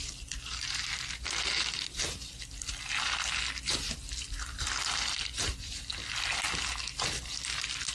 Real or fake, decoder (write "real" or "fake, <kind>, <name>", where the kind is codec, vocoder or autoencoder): real